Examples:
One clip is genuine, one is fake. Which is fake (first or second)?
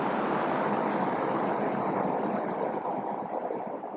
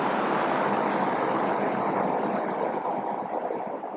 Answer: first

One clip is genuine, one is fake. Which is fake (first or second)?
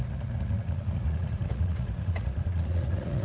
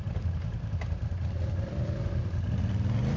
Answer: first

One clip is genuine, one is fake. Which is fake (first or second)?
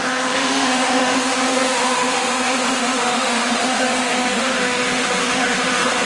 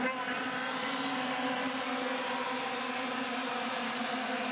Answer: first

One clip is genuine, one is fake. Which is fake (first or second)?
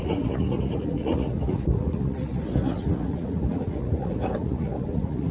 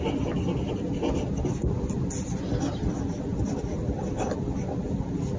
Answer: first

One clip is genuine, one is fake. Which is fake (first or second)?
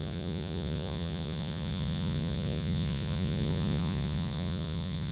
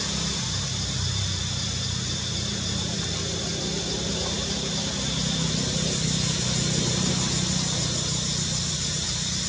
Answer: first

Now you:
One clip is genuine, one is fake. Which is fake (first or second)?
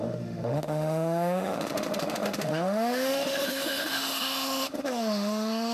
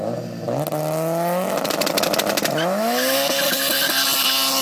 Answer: first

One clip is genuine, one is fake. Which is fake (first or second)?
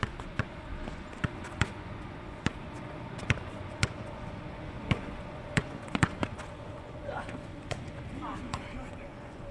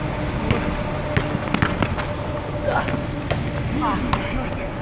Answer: first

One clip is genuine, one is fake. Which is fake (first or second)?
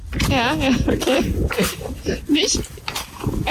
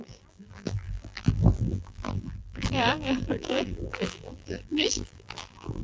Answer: second